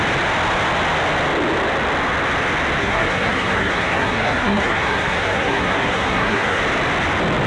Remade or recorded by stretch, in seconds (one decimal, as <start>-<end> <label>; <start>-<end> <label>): 0.0-2.8 recorded; 2.8-6.6 remade; 6.6-7.5 recorded